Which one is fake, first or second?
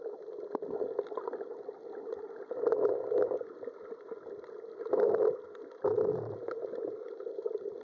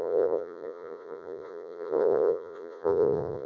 second